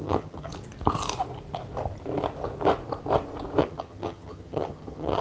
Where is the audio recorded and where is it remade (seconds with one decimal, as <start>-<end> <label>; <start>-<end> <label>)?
0.0-0.5 remade; 0.5-3.6 recorded; 3.6-5.2 remade

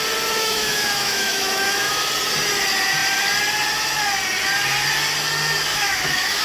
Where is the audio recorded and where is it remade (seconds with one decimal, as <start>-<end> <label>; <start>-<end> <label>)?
0.0-0.4 recorded; 0.4-2.1 remade; 2.1-5.7 recorded; 5.7-6.4 remade

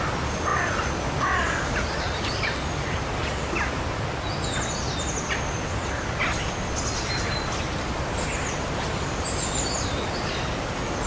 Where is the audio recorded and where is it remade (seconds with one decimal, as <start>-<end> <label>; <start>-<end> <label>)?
0.0-11.1 recorded

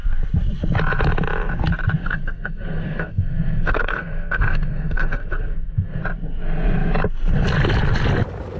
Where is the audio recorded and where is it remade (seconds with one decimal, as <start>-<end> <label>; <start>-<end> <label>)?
0.0-2.0 recorded; 2.0-6.0 remade; 6.0-8.6 recorded

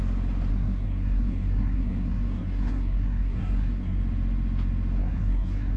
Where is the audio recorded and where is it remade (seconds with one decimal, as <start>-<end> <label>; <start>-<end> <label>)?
0.0-0.5 recorded; 0.5-4.0 remade; 4.0-5.0 recorded; 5.0-5.8 remade

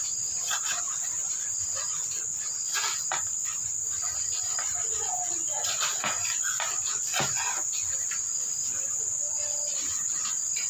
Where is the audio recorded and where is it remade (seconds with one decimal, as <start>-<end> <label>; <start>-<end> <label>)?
0.0-10.7 recorded